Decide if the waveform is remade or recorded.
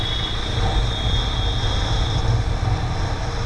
recorded